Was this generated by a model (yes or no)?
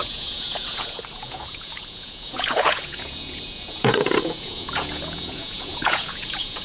yes